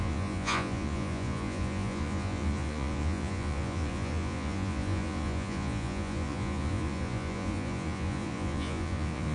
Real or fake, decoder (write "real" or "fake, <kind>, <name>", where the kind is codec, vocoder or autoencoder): fake, vocoder, Vocos